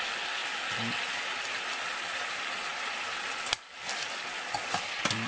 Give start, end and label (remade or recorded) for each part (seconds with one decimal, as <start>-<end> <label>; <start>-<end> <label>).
0.0-5.3 recorded